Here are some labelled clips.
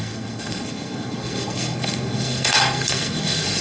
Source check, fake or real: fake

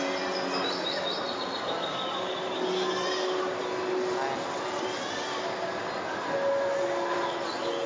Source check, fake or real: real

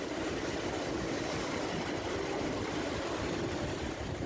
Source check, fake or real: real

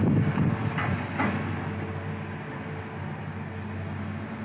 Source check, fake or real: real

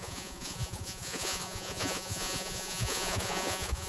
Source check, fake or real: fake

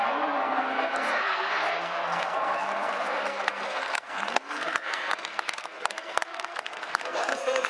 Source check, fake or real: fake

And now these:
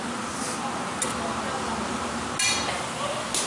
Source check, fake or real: real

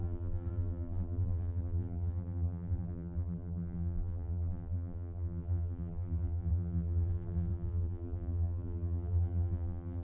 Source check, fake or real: fake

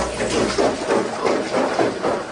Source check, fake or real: real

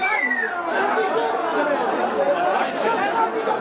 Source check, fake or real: real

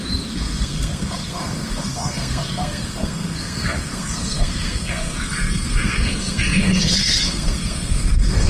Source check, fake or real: fake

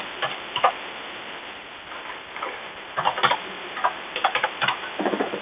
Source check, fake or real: fake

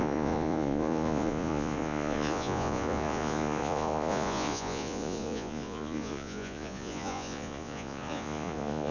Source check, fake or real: fake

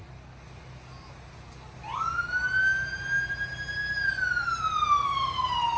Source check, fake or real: real